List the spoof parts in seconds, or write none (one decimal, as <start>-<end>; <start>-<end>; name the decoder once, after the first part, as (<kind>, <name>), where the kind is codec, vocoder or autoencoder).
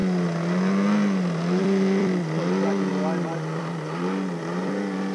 1.6-2.9 (vocoder, BigVGAN v2); 3.6-5.1